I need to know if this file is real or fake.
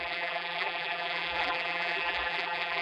fake